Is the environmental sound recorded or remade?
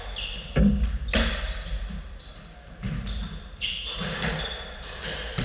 recorded